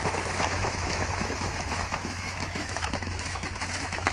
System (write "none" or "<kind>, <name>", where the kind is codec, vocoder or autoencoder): autoencoder, DAC-VAE